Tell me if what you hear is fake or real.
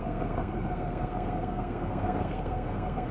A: fake